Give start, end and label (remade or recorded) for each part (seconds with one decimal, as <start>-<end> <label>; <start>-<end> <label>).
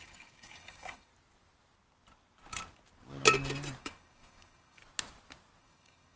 0.0-1.1 remade; 1.1-3.8 recorded; 3.8-4.8 remade; 4.8-5.6 recorded; 5.6-6.2 remade